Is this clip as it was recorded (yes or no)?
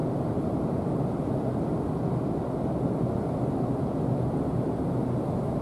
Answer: yes